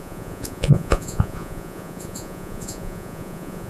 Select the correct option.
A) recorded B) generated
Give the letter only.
B